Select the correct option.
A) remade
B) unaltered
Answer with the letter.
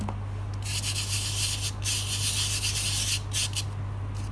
B